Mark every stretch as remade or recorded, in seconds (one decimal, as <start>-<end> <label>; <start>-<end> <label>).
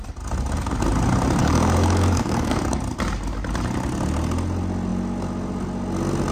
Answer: 0.0-1.4 recorded; 1.4-2.8 remade; 2.8-6.3 recorded